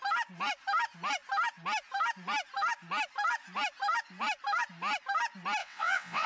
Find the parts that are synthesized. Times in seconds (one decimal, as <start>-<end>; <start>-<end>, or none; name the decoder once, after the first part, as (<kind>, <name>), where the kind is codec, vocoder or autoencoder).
5.6-6.3 (vocoder, WaveNeXt)